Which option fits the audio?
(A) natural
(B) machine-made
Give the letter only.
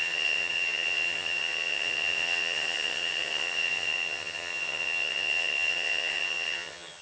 B